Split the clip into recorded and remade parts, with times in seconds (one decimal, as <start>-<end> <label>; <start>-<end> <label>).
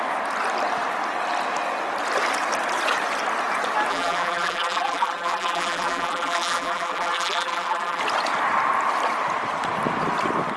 0.0-3.9 recorded; 3.9-8.0 remade; 8.0-10.6 recorded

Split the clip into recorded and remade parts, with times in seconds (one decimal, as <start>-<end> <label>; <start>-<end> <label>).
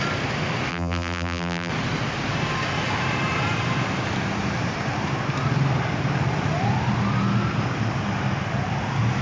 0.0-0.7 recorded; 0.7-1.7 remade; 1.7-9.2 recorded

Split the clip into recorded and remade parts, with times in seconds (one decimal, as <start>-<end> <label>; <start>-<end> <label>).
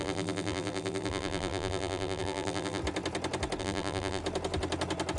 0.0-2.8 remade; 2.8-3.6 recorded; 3.6-4.2 remade; 4.2-5.2 recorded